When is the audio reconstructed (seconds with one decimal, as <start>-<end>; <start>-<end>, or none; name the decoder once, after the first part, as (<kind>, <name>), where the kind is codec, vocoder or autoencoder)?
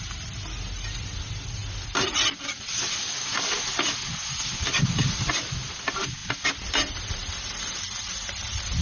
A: none